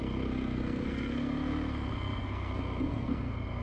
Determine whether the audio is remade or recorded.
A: remade